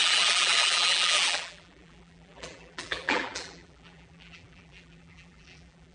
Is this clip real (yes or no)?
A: no